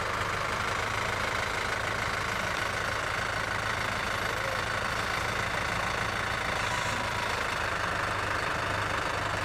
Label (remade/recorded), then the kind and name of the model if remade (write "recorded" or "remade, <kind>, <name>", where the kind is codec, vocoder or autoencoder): recorded